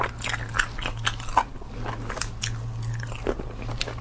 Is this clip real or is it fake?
real